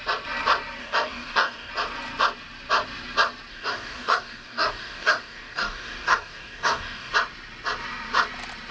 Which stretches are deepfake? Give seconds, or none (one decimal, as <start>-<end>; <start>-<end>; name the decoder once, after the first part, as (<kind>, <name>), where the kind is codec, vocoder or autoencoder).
0.8-1.7 (codec, DAC); 3.5-7.1